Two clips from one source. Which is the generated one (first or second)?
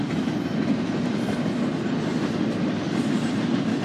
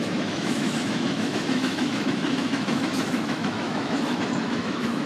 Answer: second